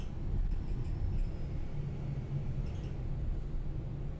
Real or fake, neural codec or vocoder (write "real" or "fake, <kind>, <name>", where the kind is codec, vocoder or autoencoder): real